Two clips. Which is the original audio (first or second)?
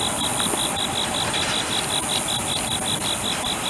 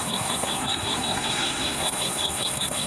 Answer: first